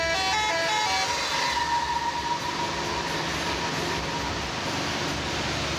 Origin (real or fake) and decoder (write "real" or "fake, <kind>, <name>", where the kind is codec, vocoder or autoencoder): real